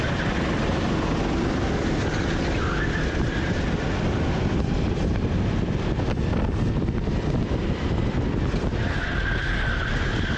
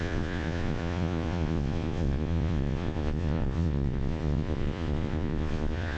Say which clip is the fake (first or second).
second